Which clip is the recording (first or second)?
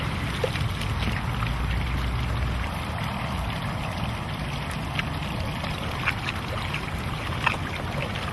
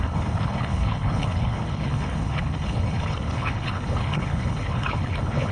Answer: first